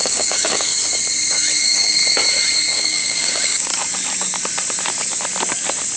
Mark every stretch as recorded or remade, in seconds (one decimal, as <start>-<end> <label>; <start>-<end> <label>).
0.0-0.7 remade; 0.7-1.6 recorded; 1.6-2.0 remade; 2.0-2.8 recorded; 2.8-3.7 remade; 3.7-6.0 recorded